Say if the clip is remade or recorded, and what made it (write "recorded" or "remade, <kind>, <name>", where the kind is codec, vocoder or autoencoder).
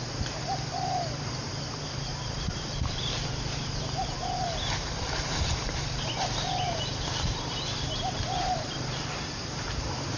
remade, vocoder, BigVGAN v2